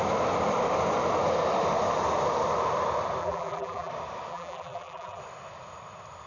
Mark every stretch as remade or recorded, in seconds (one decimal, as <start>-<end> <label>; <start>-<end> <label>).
0.0-3.2 recorded; 3.2-3.9 remade; 3.9-4.3 recorded; 4.3-5.2 remade; 5.2-6.3 recorded